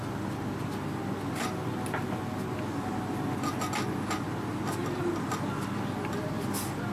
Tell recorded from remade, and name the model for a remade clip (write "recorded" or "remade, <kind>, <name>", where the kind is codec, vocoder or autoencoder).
recorded